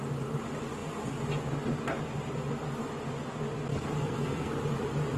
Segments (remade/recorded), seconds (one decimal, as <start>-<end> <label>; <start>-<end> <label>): 0.0-3.7 recorded; 3.7-4.6 remade; 4.6-5.2 recorded